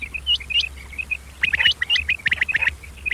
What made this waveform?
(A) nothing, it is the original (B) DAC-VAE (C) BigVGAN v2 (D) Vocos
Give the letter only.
A